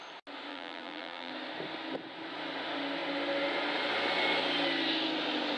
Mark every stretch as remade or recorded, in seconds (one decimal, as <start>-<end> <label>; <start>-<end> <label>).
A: 0.0-0.5 recorded; 0.5-1.3 remade; 1.3-5.6 recorded